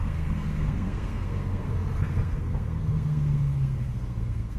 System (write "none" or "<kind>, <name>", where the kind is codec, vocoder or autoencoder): codec, SNAC